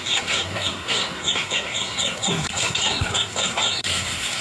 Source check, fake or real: fake